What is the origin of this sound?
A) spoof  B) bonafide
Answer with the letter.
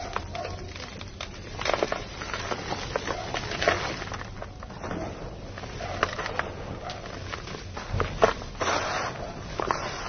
B